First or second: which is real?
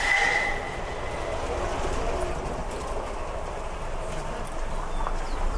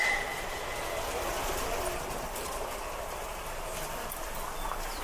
first